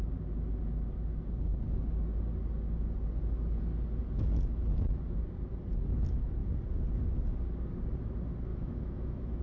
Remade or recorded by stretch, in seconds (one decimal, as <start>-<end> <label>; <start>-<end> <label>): 0.0-8.5 recorded; 8.5-9.4 remade